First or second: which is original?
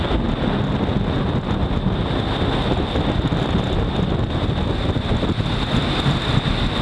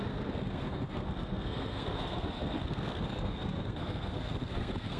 first